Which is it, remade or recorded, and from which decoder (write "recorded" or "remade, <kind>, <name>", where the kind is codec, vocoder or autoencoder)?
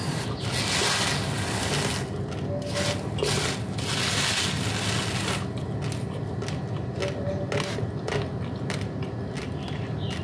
recorded